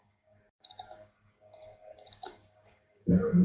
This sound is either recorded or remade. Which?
remade